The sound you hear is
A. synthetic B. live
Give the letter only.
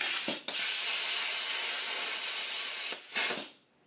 B